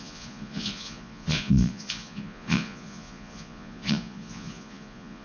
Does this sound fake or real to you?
fake